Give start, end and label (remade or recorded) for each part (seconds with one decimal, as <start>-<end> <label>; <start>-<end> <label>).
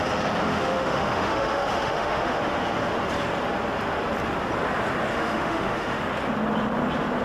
0.0-0.5 recorded; 0.5-2.4 remade; 2.4-5.1 recorded; 5.1-6.0 remade; 6.0-7.2 recorded